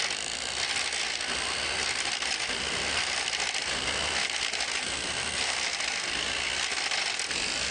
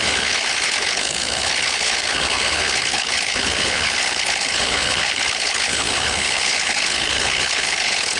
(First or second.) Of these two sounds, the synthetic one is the second